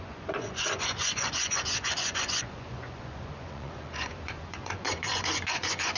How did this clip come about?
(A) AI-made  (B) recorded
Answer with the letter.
A